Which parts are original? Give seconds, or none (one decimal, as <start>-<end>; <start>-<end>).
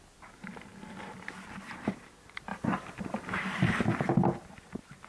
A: 0.0-2.5; 4.1-5.1